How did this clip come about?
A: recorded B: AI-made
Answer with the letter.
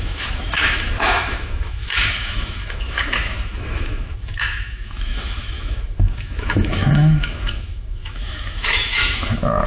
B